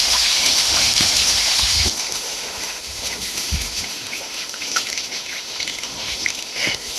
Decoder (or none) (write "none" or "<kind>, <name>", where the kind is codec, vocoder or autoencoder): autoencoder, DAC-VAE